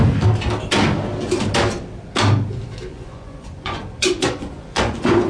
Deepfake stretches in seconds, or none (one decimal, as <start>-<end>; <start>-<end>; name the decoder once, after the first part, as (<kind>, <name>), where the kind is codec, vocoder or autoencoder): 2.9-5.3 (vocoder, Vocos)